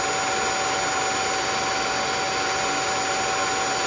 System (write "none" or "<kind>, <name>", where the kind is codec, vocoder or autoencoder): none